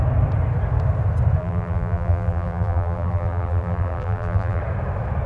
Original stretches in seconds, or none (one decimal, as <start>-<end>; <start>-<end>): 0.0-1.4; 4.6-5.3